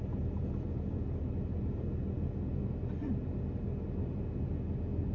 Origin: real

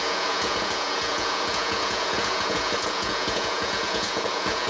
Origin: fake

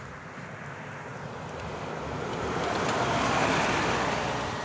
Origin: real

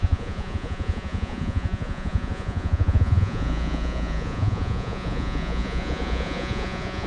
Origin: fake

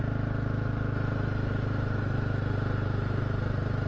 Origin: real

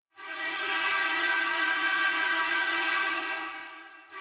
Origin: fake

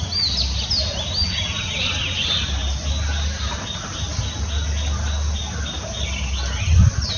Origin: real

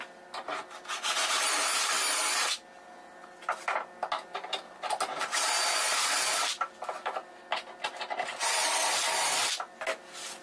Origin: real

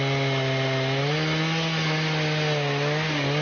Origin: real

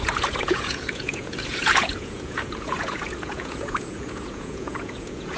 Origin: fake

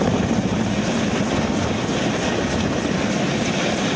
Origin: real